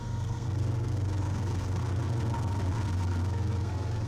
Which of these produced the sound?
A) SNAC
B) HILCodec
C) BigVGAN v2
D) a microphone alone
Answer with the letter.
A